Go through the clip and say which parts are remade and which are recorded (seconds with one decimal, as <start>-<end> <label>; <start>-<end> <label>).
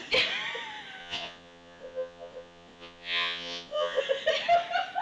0.0-1.0 recorded; 1.0-4.0 remade; 4.0-5.0 recorded